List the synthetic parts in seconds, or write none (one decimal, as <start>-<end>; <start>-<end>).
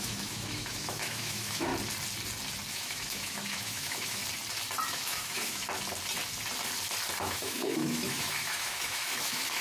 0.0-1.7; 2.7-4.2; 4.9-5.6; 7.2-9.6